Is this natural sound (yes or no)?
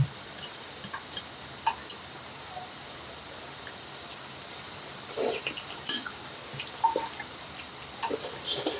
no